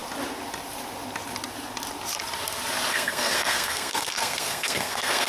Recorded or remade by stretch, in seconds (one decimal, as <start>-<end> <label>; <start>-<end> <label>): 0.0-2.9 recorded; 2.9-5.3 remade